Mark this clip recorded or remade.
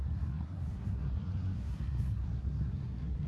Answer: remade